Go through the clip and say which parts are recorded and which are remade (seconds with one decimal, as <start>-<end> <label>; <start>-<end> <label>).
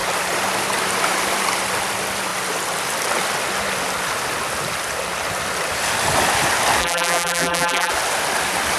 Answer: 0.0-6.8 recorded; 6.8-7.9 remade; 7.9-8.8 recorded